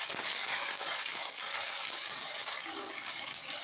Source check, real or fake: fake